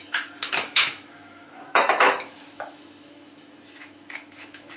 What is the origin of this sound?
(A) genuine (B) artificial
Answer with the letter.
B